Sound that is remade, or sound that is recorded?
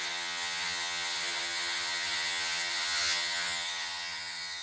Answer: remade